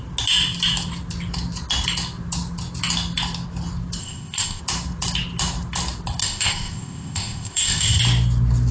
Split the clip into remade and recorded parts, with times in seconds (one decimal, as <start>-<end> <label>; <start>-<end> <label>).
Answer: 0.0-4.0 recorded; 4.0-4.6 remade; 4.6-6.2 recorded; 6.2-8.0 remade; 8.0-8.7 recorded